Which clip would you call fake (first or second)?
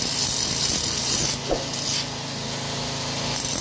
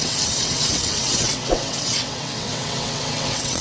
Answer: second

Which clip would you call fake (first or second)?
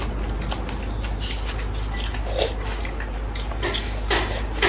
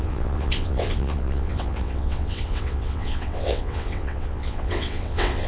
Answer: second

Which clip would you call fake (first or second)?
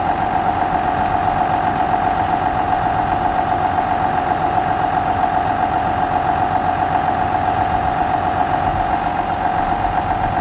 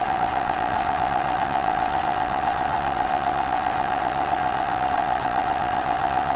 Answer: second